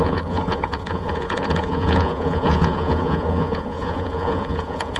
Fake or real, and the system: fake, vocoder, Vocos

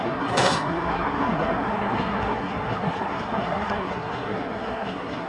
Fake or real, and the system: fake, codec, SNAC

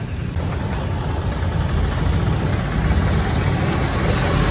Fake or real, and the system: real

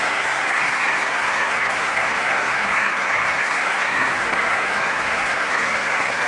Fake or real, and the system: fake, codec, SNAC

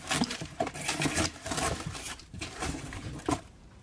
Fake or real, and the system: fake, vocoder, BigVGAN v2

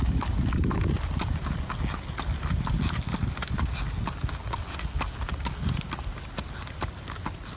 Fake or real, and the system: real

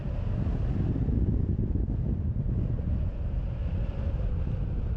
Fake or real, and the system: real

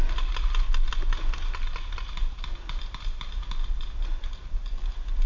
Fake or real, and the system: real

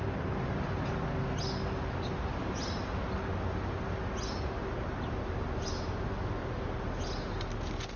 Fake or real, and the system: real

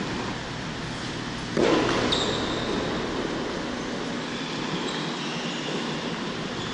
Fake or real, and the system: real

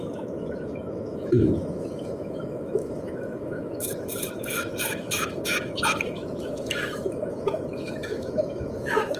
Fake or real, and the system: fake, autoencoder, DAC-VAE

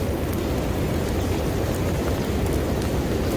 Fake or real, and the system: real